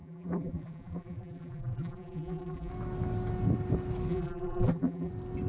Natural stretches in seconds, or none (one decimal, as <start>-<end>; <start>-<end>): 2.7-4.1; 5.1-5.5